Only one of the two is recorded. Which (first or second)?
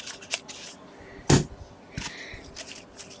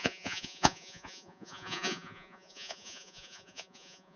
first